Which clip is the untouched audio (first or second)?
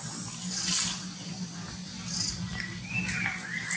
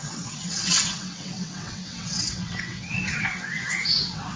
first